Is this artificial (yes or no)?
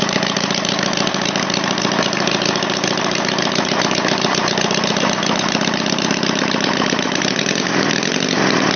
no